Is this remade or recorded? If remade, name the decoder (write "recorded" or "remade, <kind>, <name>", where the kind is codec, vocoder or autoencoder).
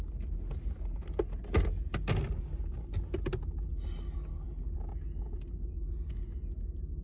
recorded